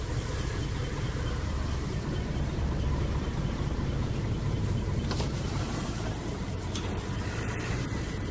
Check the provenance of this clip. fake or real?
fake